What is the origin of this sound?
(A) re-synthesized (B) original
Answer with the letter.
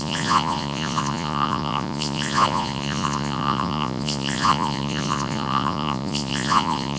A